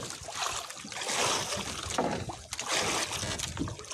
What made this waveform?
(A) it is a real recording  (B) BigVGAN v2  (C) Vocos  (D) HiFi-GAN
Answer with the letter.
A